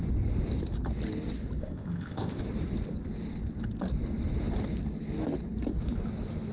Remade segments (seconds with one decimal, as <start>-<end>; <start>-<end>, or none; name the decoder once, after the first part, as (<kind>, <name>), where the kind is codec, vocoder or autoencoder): 1.6-2.4 (codec, ZipCodec)